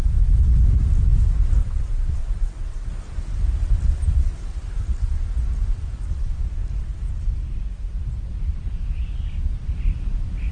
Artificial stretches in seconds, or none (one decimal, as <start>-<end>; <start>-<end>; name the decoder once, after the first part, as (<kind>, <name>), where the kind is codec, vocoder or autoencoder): 1.6-2.9 (vocoder, WaveNeXt)